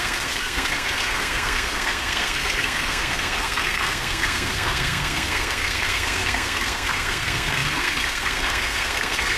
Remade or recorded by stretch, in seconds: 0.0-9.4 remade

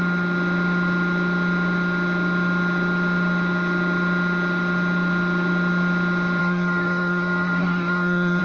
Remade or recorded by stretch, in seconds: 0.0-6.4 recorded; 6.4-8.4 remade

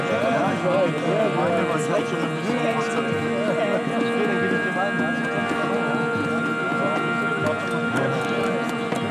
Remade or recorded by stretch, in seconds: 0.0-9.1 recorded

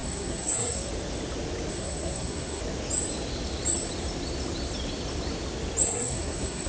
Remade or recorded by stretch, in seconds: 0.0-0.9 remade; 0.9-1.7 recorded; 1.7-2.6 remade; 2.6-5.8 recorded; 5.8-6.7 remade

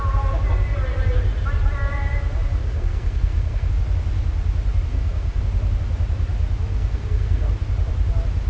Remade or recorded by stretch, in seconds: 0.0-2.6 recorded; 2.6-3.7 remade; 3.7-4.9 recorded; 4.9-5.4 remade; 5.4-6.7 recorded; 6.7-7.5 remade; 7.5-8.5 recorded